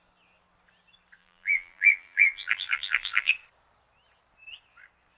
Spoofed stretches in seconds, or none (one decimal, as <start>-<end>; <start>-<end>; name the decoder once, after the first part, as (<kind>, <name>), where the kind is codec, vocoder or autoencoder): 1.2-3.3 (vocoder, BigVGAN v2)